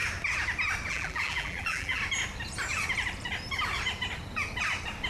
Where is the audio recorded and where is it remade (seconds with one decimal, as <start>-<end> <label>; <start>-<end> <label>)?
0.0-0.9 recorded; 0.9-2.0 remade; 2.0-5.1 recorded